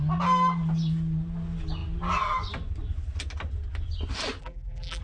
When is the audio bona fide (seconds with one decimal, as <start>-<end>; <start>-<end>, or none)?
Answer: 0.0-4.4